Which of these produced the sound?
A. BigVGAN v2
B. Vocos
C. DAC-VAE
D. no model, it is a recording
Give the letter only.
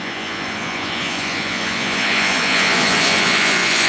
B